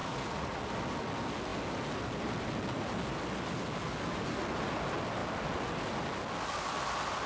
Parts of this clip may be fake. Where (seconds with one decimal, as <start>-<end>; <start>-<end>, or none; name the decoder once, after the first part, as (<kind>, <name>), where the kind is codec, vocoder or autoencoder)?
0.0-0.6 (vocoder, Vocos)